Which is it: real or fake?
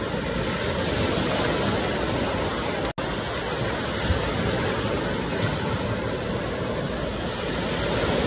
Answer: real